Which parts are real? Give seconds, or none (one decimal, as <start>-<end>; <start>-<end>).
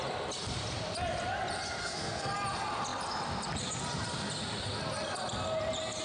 0.0-1.8; 2.3-6.0